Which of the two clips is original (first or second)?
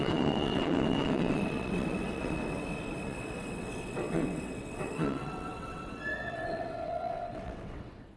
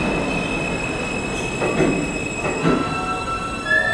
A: second